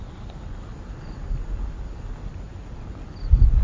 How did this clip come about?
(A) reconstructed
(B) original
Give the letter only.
B